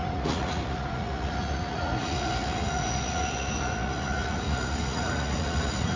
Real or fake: fake